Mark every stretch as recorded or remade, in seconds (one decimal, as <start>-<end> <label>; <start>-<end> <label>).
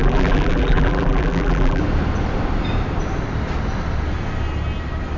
0.0-1.8 remade; 1.8-5.2 recorded